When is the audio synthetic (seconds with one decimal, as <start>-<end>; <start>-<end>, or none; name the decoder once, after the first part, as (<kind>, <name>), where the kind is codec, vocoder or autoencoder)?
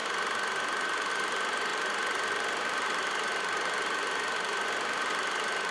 1.1-5.7 (vocoder, BigVGAN v2)